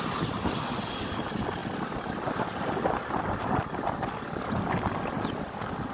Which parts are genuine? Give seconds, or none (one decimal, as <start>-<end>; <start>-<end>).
0.0-5.9